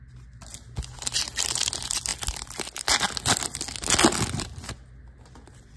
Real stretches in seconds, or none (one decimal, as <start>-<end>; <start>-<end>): 0.0-5.8